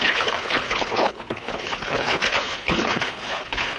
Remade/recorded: remade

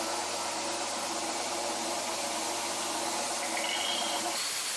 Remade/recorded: recorded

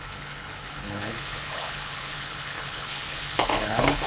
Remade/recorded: remade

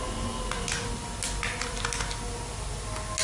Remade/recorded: recorded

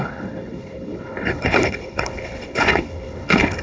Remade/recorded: remade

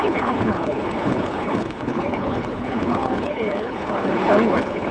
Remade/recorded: remade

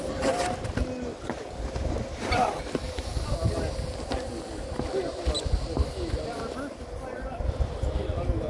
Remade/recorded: recorded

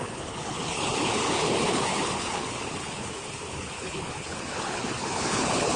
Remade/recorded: remade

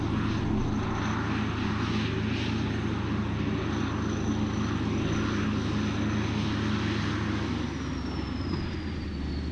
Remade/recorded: recorded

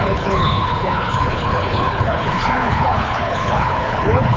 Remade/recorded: remade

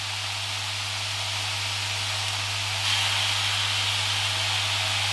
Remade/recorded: recorded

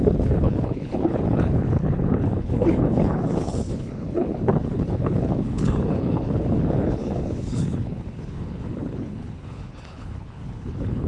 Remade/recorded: remade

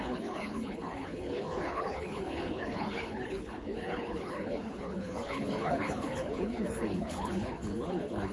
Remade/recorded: remade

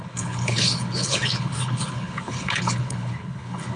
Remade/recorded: remade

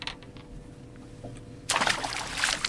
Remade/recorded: recorded